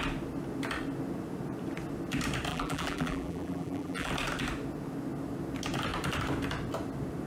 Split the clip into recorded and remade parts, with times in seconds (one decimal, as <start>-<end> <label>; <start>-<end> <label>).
0.0-2.5 recorded; 2.5-4.1 remade; 4.1-7.3 recorded